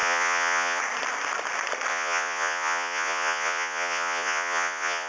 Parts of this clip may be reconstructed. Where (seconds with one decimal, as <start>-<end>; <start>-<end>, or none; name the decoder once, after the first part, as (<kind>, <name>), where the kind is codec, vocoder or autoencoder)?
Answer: 0.0-0.8 (vocoder, Vocos); 1.9-5.1